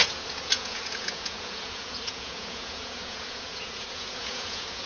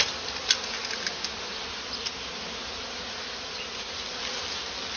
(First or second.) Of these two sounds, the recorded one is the second